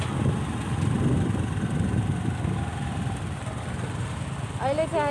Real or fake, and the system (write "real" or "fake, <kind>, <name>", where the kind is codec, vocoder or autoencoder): real